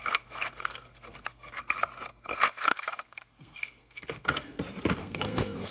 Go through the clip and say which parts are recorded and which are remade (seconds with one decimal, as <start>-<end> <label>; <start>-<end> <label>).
0.0-1.6 remade; 1.6-2.1 recorded; 2.1-4.6 remade; 4.6-5.0 recorded; 5.0-5.7 remade